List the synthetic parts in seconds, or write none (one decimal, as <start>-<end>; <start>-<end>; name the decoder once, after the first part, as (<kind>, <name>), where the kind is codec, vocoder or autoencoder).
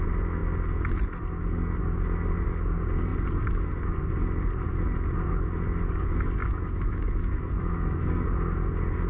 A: 6.4-8.1 (autoencoder, DAC-VAE)